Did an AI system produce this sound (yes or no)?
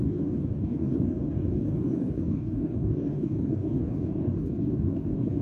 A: yes